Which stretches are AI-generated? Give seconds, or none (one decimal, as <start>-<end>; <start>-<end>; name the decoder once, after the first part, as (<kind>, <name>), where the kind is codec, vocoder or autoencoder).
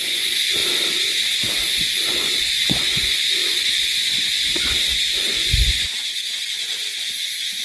0.0-0.6 (vocoder, Vocos); 2.1-7.6